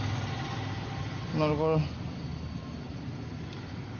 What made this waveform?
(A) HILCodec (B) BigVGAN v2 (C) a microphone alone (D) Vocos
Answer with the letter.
C